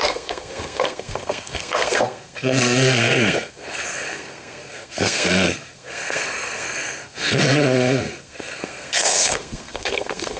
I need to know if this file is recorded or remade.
remade